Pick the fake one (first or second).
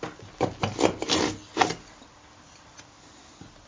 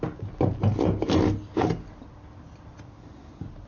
first